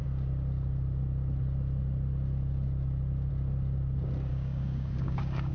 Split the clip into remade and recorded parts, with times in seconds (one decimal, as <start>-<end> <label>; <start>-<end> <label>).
0.0-4.3 recorded; 4.3-5.5 remade